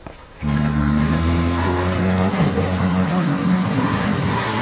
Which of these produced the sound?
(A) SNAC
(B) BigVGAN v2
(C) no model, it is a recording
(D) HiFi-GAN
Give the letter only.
A